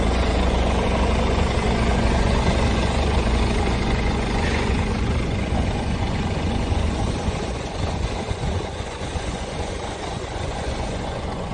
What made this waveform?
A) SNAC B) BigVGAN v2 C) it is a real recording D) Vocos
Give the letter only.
D